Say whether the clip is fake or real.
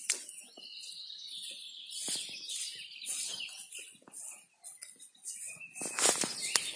real